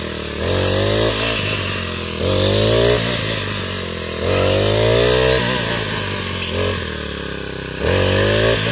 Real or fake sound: real